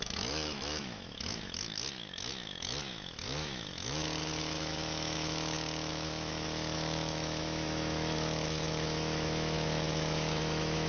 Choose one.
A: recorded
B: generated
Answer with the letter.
B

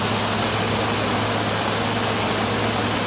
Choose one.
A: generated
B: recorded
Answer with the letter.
B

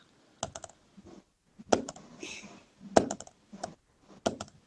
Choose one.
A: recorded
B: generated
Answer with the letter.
A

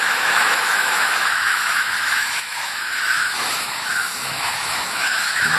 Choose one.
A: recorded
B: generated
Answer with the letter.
B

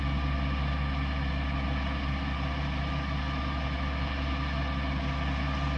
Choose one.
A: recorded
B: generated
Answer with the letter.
A